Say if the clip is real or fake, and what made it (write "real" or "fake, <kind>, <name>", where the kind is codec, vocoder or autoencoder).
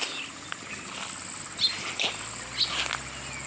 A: real